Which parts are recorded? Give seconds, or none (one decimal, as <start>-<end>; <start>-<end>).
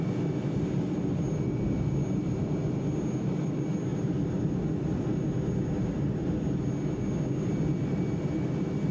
0.0-8.9